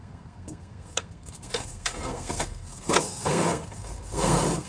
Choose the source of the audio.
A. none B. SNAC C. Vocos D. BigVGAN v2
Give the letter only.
B